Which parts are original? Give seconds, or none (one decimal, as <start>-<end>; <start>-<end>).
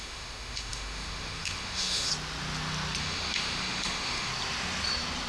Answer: 2.1-3.0; 4.3-5.3